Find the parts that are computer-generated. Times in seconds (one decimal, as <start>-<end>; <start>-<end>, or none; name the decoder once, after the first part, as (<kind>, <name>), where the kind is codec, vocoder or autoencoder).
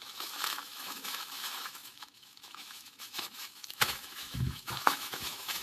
0.0-5.6 (autoencoder, DAC-VAE)